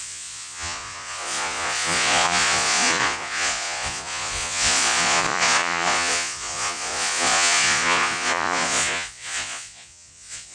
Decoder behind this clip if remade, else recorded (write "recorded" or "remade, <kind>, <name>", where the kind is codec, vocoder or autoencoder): remade, vocoder, Vocos